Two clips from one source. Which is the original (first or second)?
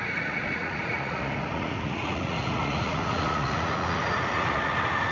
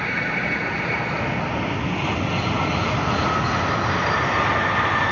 second